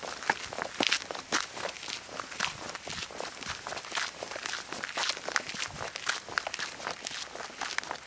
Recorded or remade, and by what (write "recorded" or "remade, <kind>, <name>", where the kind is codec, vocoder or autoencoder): recorded